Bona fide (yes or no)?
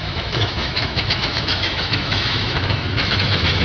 no